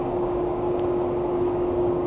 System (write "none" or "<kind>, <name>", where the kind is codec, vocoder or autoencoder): codec, DAC